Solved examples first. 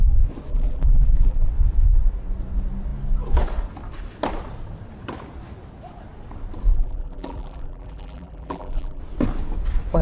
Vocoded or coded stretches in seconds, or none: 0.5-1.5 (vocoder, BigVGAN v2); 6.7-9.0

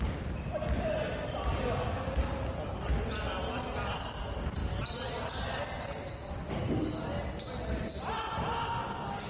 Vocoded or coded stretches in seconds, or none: none

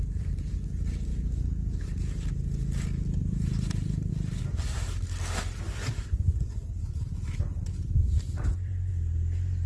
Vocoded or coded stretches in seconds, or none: 3.2-4.1 (vocoder, BigVGAN v2); 7.5-8.9

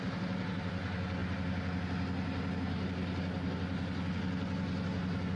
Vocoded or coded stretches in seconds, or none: none

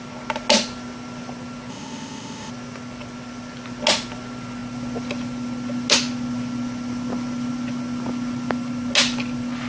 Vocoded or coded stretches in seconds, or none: 1.7-2.5 (codec, ZipCodec)

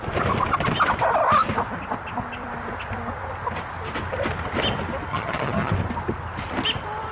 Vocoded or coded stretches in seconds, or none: 5.1-5.7 (vocoder, HiFi-GAN)